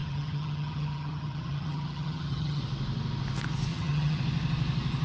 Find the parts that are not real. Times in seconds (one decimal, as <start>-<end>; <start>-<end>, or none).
0.0-2.6; 3.7-4.2